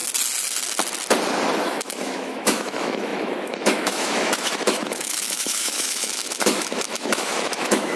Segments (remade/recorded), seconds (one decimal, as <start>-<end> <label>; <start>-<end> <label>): 0.0-1.6 recorded; 1.6-8.0 remade